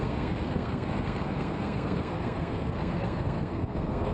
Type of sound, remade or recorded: remade